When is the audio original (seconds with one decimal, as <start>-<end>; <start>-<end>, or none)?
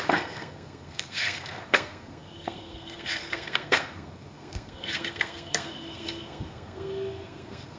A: none